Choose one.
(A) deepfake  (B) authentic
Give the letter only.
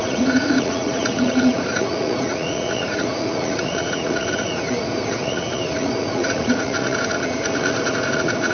A